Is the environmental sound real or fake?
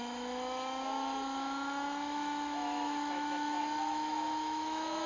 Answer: fake